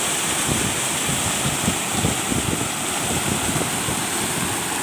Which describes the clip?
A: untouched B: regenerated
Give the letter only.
A